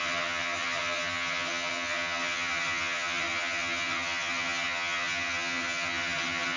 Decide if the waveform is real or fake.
fake